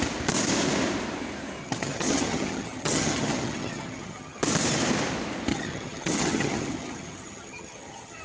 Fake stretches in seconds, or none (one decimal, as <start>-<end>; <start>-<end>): 1.6-4.4; 5.5-8.2